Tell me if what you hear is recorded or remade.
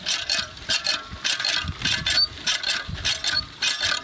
recorded